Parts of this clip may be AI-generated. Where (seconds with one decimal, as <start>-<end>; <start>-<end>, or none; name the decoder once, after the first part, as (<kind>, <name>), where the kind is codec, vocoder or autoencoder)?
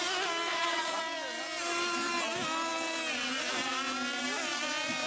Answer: 0.5-1.0 (vocoder, Vocos)